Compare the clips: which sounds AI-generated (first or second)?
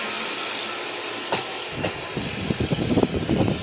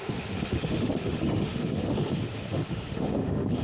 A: second